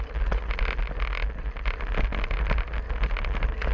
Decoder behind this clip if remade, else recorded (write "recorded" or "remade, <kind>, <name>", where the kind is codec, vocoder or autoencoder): recorded